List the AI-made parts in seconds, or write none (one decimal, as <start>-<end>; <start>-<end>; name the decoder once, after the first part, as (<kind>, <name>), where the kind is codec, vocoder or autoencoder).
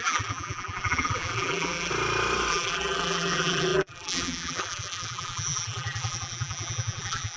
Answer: 0.0-1.9 (vocoder, BigVGAN v2); 2.5-7.4